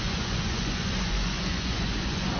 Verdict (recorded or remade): remade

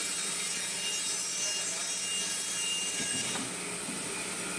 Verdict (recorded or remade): recorded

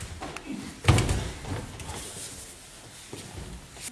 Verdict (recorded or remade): recorded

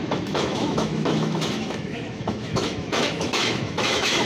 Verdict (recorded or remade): remade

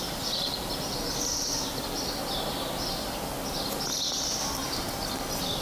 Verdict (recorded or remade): recorded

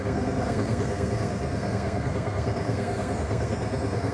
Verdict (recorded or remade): remade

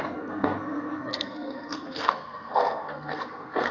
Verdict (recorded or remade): remade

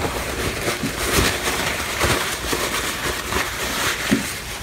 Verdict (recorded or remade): remade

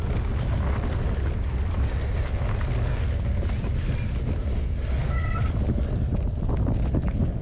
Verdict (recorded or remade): recorded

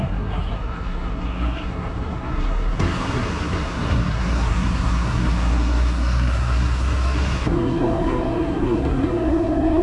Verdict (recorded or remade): remade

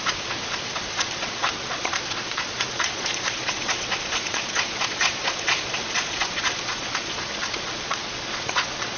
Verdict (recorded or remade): remade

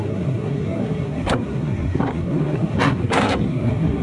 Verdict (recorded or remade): remade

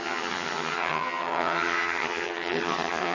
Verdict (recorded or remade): remade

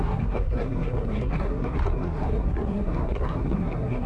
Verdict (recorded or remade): remade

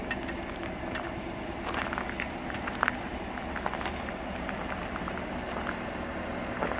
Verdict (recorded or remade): recorded